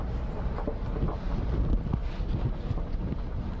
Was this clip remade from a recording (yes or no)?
no